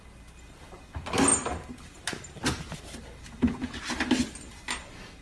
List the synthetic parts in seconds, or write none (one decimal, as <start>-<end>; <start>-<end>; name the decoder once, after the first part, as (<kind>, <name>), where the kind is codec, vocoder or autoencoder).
none